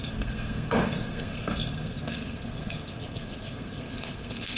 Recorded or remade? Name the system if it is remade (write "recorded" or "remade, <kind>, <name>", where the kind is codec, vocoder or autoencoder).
remade, codec, SNAC